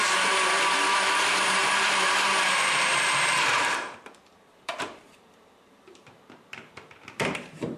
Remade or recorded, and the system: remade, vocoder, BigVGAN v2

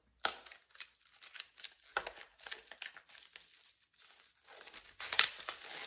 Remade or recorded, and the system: recorded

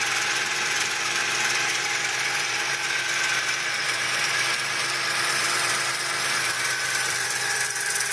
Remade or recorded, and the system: remade, vocoder, BigVGAN v2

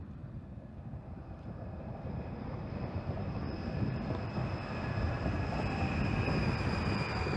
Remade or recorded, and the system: remade, vocoder, BigVGAN v2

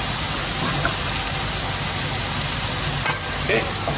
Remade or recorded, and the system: recorded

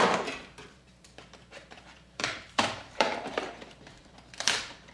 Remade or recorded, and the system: remade, vocoder, BigVGAN v2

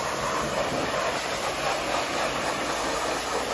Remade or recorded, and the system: recorded